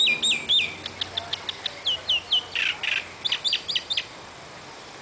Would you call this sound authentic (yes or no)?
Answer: yes